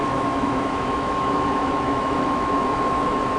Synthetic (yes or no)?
yes